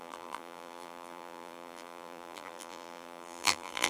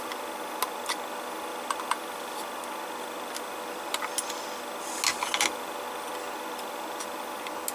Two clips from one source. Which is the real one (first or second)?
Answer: second